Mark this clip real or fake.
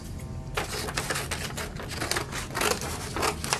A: real